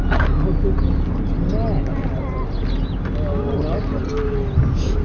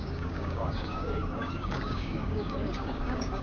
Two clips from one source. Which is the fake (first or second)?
second